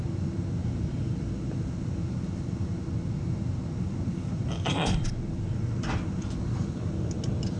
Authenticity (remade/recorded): recorded